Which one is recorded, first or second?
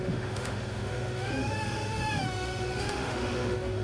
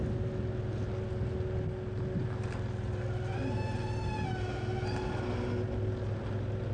second